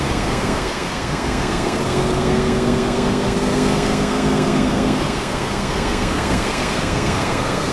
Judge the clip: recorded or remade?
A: remade